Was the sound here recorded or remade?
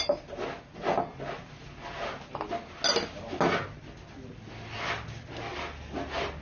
recorded